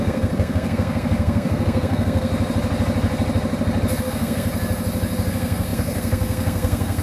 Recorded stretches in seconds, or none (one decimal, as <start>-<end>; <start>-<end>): 2.3-4.0; 4.5-5.3